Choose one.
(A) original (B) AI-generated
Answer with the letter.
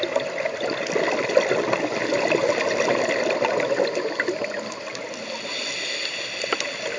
A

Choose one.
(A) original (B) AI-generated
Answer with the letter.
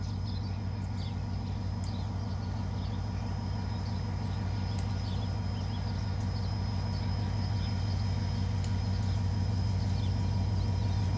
A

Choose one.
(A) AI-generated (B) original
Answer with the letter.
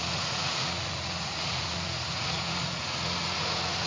A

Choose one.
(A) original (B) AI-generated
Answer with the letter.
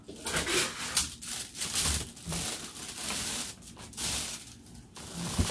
A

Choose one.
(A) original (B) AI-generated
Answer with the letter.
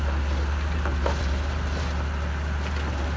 A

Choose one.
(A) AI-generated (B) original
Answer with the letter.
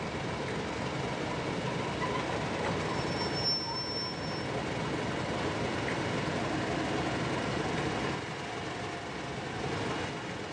B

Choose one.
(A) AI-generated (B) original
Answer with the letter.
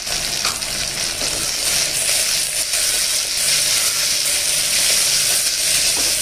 B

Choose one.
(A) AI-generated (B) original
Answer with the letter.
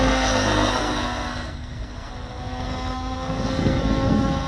A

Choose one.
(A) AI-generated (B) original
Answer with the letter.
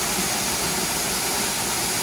B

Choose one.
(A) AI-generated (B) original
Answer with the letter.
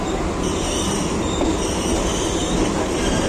B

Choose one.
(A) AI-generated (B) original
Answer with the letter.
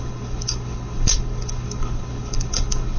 A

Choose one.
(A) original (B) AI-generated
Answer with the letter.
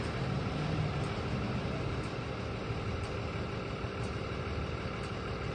A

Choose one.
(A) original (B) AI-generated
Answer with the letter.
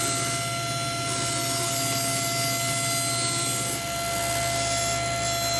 A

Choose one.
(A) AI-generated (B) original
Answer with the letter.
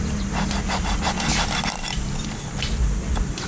B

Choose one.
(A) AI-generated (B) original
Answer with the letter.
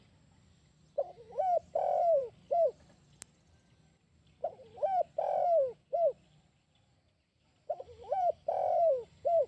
A